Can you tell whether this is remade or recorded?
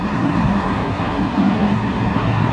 remade